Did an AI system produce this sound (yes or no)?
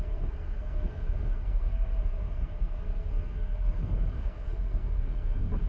yes